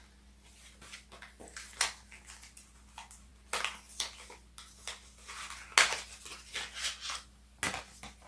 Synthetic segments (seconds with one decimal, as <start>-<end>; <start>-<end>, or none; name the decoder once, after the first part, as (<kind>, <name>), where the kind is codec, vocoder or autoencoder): none